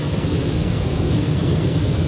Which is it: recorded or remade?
remade